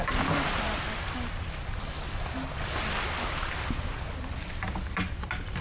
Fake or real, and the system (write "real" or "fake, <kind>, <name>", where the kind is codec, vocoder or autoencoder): real